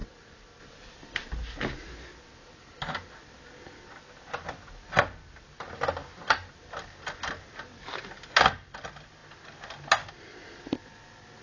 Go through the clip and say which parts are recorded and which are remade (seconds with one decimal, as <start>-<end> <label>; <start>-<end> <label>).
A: 0.0-11.4 recorded